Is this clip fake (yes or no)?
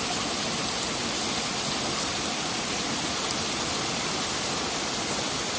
no